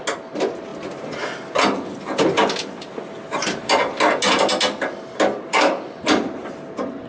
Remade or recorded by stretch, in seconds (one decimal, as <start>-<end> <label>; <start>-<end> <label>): 0.0-5.5 recorded; 5.5-6.4 remade; 6.4-7.1 recorded